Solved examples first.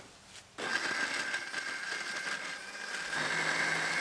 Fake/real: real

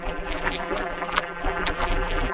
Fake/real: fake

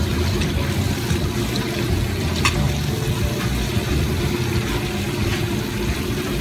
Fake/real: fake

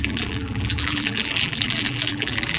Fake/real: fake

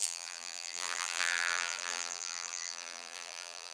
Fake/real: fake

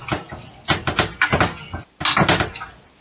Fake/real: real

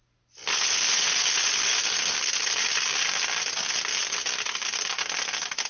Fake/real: real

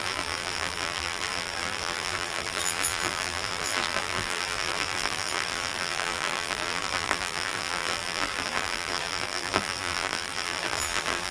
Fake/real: fake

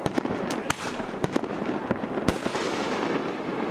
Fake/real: fake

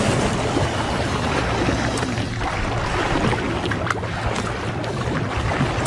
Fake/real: real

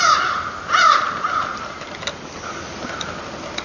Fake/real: real